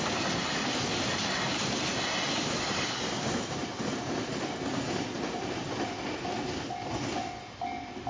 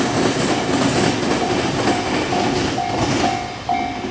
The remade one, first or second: first